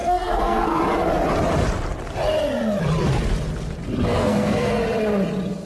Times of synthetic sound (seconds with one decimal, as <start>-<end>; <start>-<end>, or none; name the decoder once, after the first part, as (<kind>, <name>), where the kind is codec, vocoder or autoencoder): 0.0-0.8 (codec, SNAC); 4.2-4.8